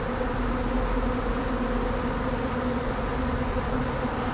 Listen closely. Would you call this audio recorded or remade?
recorded